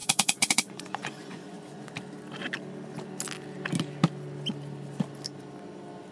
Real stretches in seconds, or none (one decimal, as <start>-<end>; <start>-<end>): 1.9-6.1